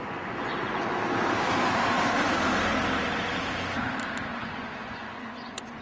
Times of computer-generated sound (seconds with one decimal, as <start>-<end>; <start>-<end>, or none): 0.0-0.8; 4.3-5.8

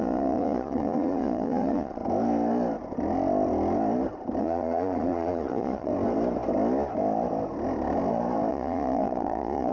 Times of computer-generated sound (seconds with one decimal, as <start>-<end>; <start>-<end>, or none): 0.0-2.0; 4.4-5.9; 8.5-9.7